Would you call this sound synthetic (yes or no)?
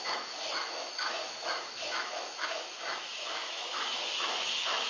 yes